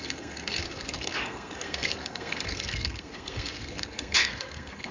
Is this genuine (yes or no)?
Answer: no